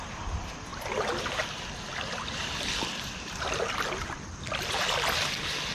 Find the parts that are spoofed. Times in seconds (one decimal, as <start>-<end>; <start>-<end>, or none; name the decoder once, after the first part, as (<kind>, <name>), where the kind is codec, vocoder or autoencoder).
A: none